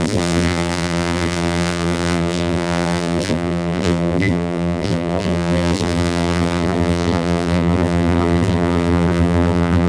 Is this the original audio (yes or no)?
no